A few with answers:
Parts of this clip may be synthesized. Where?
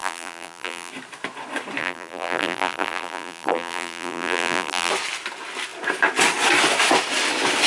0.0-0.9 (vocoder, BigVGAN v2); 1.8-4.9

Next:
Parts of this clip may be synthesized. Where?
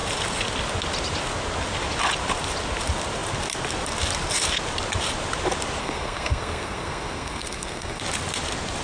5.8-8.0 (codec, SNAC)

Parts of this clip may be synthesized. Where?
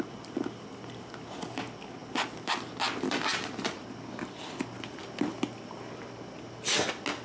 none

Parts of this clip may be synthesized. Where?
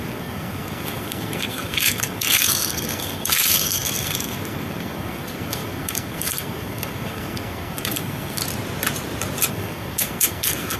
0.0-8.4 (codec, SNAC); 9.5-10.8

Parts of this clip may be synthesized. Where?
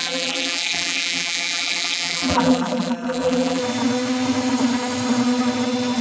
0.0-3.6 (vocoder, BigVGAN v2)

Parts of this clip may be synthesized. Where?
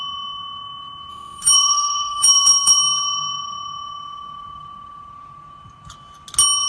1.1-2.8 (autoencoder, DAC-VAE)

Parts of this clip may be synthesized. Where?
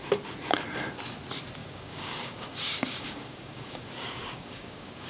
1.6-5.1 (codec, DAC)